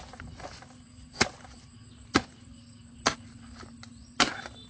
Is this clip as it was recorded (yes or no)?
yes